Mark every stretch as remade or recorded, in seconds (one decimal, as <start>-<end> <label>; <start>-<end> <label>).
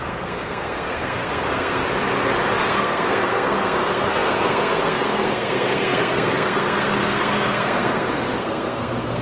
0.0-1.8 remade; 1.8-2.6 recorded; 2.6-9.2 remade